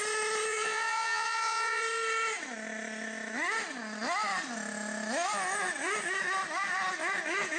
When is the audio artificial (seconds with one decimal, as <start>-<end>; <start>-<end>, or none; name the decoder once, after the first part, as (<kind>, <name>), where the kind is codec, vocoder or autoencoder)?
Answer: 0.5-1.8 (vocoder, Vocos)